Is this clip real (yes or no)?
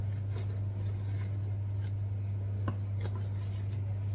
yes